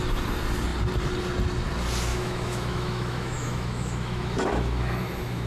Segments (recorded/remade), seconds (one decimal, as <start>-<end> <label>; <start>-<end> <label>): 0.0-2.1 recorded; 2.1-5.5 remade